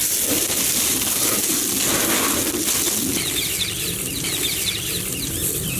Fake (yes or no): no